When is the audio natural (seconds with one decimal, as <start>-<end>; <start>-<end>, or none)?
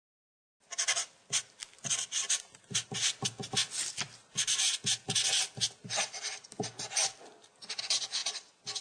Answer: 0.0-8.8